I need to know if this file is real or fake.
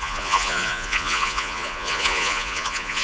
fake